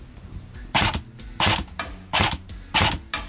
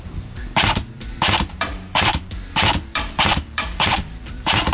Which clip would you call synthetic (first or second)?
second